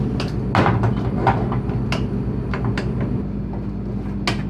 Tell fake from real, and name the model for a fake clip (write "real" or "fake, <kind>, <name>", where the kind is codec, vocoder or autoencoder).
real